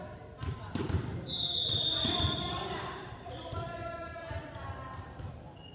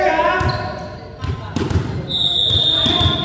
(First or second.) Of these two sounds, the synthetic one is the first